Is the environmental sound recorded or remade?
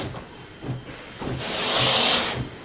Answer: recorded